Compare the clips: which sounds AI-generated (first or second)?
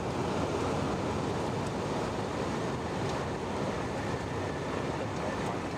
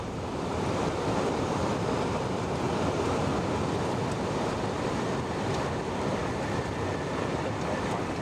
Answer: second